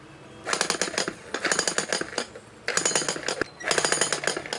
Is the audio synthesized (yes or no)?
no